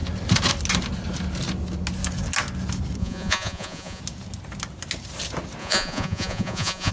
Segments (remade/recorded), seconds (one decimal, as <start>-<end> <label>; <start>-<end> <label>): 0.0-3.0 recorded; 3.0-4.0 remade; 4.0-5.6 recorded; 5.6-6.9 remade